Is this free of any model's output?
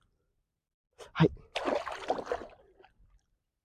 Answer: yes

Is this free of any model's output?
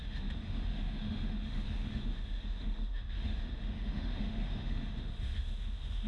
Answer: no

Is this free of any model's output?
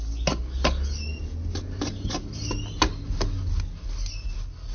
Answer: yes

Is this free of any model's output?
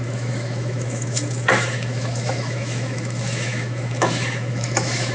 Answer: no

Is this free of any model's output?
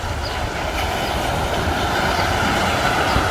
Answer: yes